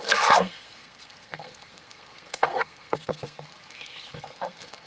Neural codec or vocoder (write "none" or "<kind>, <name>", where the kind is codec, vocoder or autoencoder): codec, SNAC